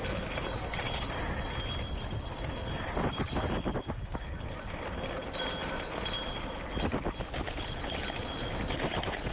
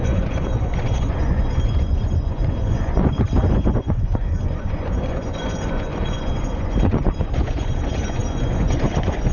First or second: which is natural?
first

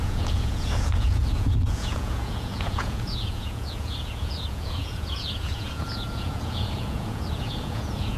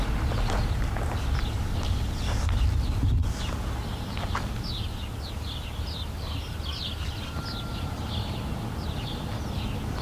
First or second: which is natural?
second